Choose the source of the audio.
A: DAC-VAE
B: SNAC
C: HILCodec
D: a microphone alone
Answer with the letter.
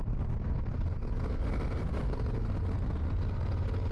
D